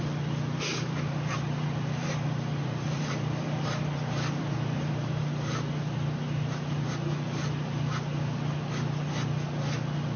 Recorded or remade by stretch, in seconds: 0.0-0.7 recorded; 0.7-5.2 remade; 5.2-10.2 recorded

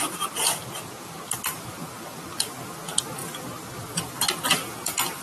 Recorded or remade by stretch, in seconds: 0.0-5.2 recorded

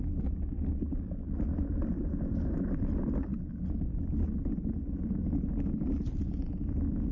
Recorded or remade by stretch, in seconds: 0.0-7.1 recorded

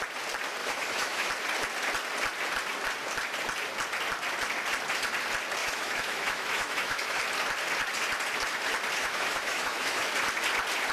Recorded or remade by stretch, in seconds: 0.0-0.6 recorded; 0.6-1.3 remade; 1.3-5.6 recorded; 5.6-7.2 remade; 7.2-9.0 recorded; 9.0-10.1 remade; 10.1-10.9 recorded

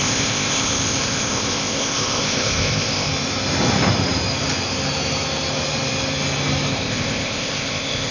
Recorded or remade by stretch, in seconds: 0.0-3.1 remade; 3.1-6.7 recorded; 6.7-8.1 remade

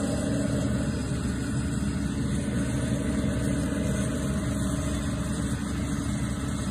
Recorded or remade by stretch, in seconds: 0.0-6.7 recorded